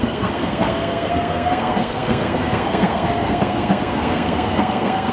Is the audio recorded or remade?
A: remade